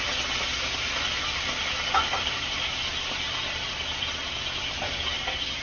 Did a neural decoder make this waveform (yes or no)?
no